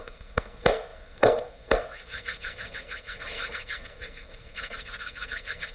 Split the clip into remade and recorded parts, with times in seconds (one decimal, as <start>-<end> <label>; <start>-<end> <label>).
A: 0.0-5.7 remade